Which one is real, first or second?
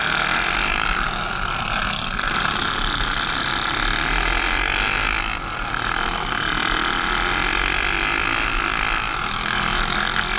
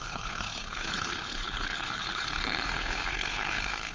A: first